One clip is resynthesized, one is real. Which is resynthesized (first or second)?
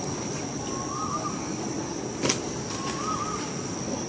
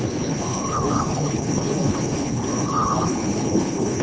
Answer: second